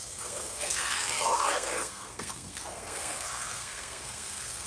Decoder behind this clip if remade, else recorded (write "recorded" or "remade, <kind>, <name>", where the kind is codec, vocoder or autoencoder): remade, codec, SNAC